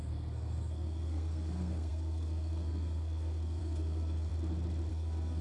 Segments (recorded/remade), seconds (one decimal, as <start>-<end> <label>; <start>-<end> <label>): 0.0-4.3 remade; 4.3-4.9 recorded; 4.9-5.4 remade